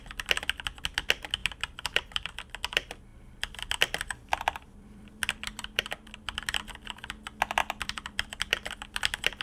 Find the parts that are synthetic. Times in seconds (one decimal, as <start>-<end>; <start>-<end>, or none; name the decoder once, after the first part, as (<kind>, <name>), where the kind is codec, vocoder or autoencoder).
1.4-2.3 (vocoder, BigVGAN v2); 3.1-6.6; 7.6-9.4